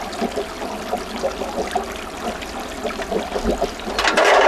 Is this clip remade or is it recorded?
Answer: recorded